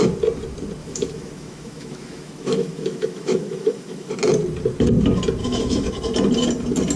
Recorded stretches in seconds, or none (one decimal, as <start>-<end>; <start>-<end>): 0.0-0.8; 4.1-5.4; 5.9-7.0